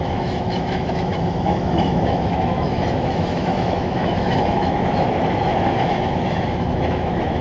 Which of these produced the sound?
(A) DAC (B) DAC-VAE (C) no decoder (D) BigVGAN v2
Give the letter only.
B